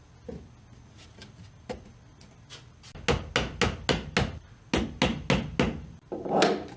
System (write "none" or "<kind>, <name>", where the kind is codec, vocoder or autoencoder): none